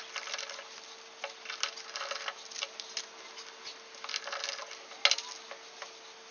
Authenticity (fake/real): real